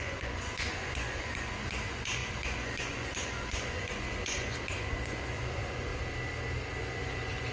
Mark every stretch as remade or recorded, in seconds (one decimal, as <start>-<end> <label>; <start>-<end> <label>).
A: 0.0-5.9 remade; 5.9-6.8 recorded; 6.8-7.5 remade